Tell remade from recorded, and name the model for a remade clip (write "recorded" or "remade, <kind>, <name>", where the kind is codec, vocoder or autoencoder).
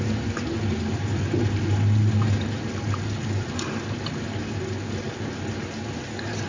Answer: recorded